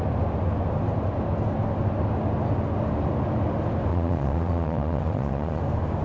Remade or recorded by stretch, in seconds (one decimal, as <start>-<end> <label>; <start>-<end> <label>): 0.0-3.9 recorded; 3.9-5.6 remade; 5.6-6.0 recorded